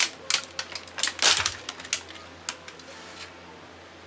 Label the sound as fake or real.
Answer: real